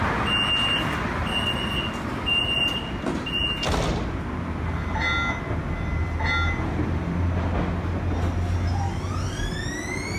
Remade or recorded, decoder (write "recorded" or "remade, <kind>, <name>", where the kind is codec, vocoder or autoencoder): recorded